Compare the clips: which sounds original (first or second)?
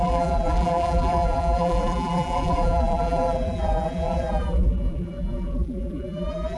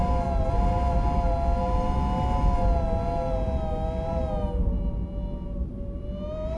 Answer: second